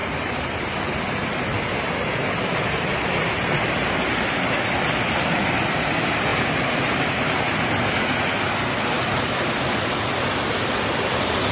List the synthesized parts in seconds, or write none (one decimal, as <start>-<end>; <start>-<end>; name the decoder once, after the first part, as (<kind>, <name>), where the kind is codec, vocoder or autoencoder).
0.0-0.7 (vocoder, BigVGAN v2); 6.3-7.4